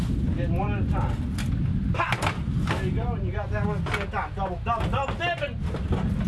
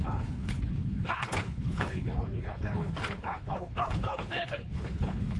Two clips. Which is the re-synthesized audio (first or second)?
second